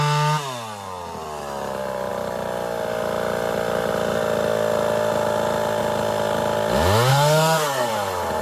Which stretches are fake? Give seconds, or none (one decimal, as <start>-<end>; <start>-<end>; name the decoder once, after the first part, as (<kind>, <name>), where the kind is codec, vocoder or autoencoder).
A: 7.1-7.9 (codec, SNAC)